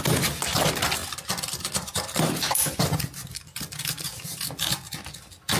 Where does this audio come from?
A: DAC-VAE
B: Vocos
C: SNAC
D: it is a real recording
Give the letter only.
D